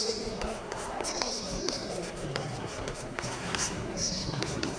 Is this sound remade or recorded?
remade